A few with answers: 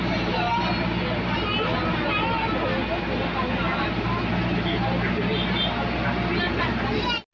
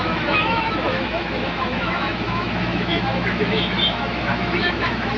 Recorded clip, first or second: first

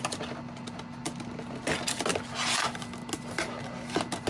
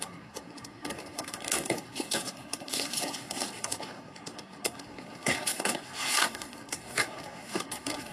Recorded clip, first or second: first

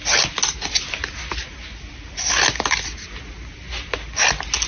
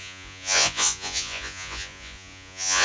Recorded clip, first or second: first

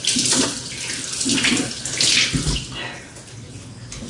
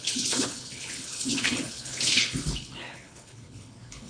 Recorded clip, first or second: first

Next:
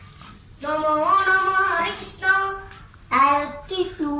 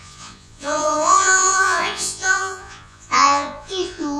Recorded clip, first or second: first